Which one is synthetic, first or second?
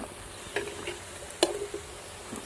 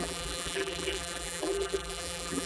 second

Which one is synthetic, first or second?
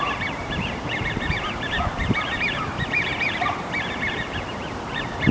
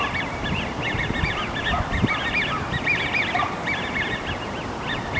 first